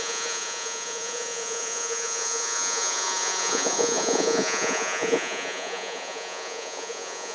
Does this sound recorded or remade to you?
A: remade